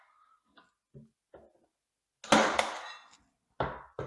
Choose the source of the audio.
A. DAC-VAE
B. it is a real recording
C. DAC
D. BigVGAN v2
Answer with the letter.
B